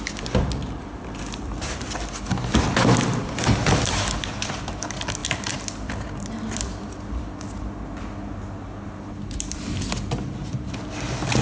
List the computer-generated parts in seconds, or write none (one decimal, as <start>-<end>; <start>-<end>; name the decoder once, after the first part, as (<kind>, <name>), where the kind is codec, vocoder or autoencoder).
none